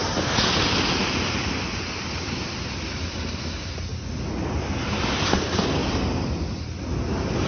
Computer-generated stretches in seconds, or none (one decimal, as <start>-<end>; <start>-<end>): 0.0-3.9; 4.9-5.8